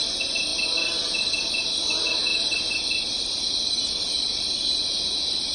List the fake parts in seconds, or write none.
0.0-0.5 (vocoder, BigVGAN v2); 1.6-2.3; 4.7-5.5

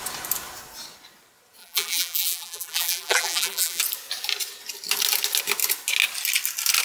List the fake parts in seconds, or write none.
1.6-3.8 (vocoder, BigVGAN v2)

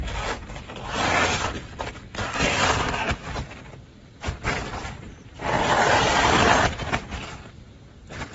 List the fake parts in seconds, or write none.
4.7-6.1 (vocoder, BigVGAN v2)

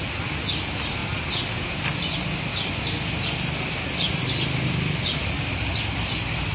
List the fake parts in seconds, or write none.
none